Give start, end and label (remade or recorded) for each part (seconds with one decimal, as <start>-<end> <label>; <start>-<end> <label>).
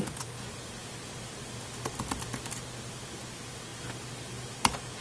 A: 0.0-5.0 recorded